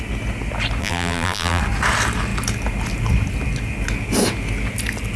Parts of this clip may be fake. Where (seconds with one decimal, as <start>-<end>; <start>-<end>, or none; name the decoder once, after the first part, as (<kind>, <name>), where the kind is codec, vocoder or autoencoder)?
0.8-1.6 (vocoder, BigVGAN v2)